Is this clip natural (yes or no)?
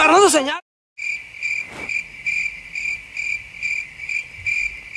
yes